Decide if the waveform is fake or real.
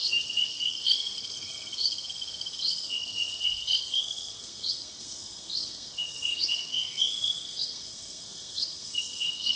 fake